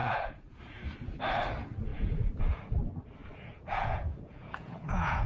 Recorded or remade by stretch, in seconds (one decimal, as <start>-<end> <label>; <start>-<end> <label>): 0.0-0.6 remade; 0.6-1.9 recorded; 1.9-2.4 remade; 2.4-3.2 recorded; 3.2-5.3 remade